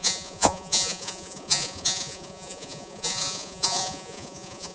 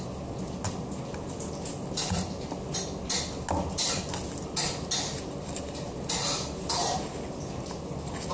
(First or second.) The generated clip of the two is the first